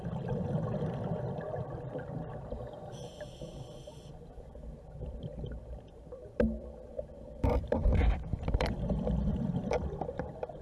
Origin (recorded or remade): remade